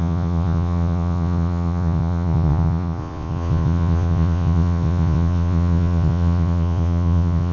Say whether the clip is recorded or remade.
remade